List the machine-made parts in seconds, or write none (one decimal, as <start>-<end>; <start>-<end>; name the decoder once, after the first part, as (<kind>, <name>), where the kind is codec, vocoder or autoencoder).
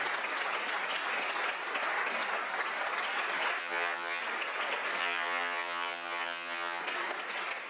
3.6-4.2 (vocoder, HiFi-GAN); 5.0-6.8